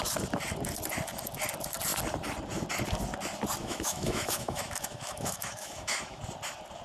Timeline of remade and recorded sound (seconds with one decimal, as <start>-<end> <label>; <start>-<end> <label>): 0.0-3.6 recorded; 3.6-6.2 remade; 6.2-6.8 recorded